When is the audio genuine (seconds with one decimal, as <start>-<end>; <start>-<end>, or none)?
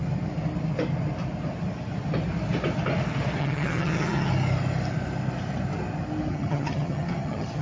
0.0-3.4; 4.3-6.3